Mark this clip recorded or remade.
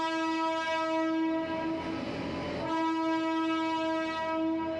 recorded